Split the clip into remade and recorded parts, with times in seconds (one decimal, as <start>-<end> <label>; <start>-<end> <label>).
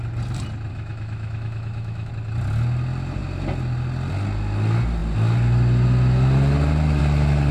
0.0-0.7 recorded; 0.7-2.1 remade; 2.1-7.5 recorded